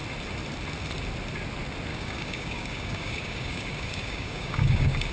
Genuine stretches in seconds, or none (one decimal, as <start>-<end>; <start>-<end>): 0.0-1.9